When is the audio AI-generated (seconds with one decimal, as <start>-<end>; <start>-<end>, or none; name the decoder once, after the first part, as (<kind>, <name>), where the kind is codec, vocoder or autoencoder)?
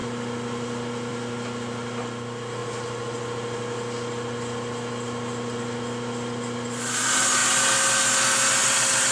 none